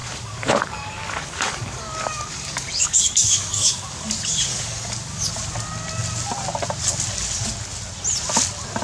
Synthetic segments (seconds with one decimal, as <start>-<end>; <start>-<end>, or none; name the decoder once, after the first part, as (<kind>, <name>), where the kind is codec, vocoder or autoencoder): 0.0-4.0 (codec, DAC); 4.5-5.3